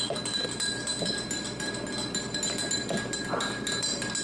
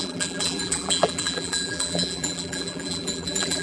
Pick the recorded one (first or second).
first